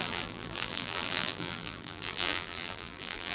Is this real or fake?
fake